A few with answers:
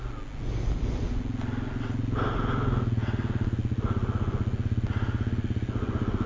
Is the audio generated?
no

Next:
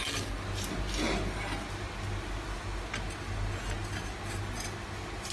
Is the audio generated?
no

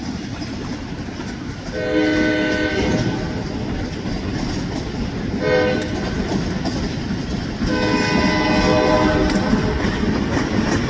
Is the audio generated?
no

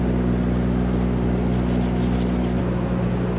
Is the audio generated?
no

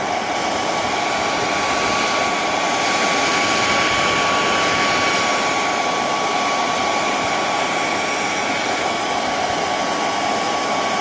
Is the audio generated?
no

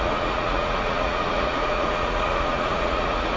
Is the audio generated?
yes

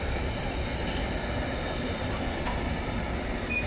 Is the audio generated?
no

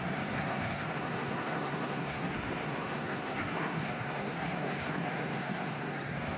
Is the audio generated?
yes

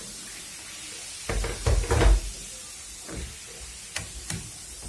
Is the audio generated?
no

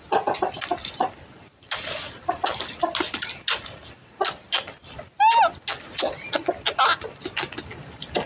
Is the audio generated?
no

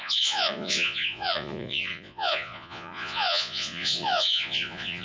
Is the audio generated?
yes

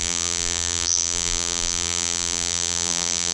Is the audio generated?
yes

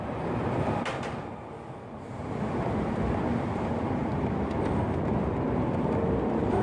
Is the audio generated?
no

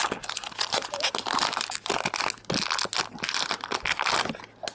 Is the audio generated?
no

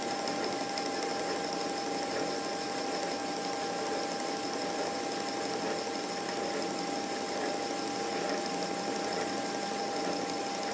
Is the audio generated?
no